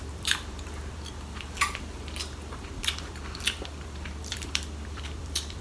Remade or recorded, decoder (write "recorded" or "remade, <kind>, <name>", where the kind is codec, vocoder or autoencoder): remade, vocoder, BigVGAN v2